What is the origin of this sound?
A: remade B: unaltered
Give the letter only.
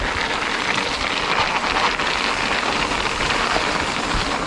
B